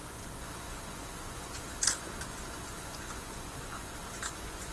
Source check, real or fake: fake